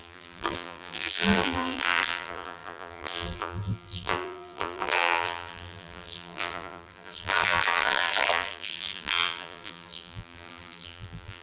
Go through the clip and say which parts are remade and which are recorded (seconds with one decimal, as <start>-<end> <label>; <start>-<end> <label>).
0.0-11.4 remade